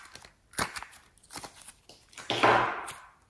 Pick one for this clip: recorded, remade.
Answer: recorded